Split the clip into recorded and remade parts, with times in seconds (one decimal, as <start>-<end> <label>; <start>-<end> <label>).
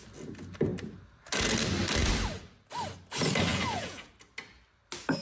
0.0-3.5 recorded; 3.5-4.1 remade; 4.1-5.2 recorded